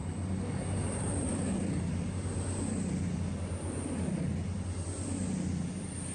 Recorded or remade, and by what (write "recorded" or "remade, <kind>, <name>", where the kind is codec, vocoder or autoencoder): recorded